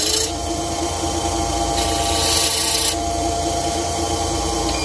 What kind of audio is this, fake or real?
real